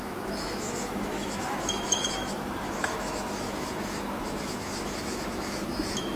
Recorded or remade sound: remade